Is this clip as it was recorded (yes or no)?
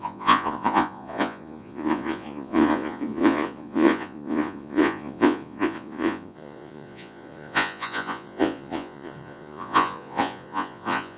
no